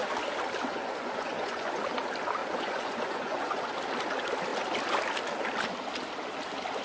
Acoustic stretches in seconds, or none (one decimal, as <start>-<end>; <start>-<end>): 0.0-0.7; 1.8-2.4; 3.7-6.8